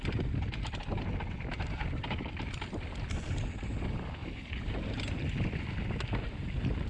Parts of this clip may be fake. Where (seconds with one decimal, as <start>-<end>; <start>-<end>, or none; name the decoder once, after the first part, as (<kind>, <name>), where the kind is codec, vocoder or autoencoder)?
4.2-5.2 (vocoder, BigVGAN v2)